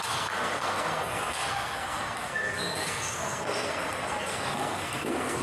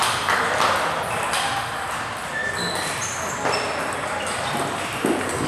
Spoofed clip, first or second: first